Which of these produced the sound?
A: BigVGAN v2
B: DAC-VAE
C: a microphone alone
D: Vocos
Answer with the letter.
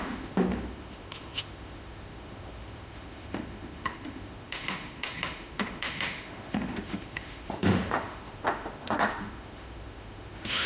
B